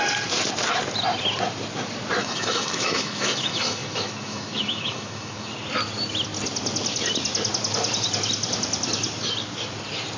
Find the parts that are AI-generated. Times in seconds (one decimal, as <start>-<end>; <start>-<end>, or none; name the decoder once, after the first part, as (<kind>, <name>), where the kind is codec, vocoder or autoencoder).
2.2-5.5 (autoencoder, DAC-VAE)